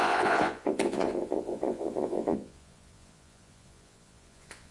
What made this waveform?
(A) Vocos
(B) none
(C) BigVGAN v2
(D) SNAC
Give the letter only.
A